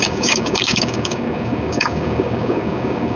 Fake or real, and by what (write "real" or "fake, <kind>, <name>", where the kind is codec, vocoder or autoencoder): fake, codec, DAC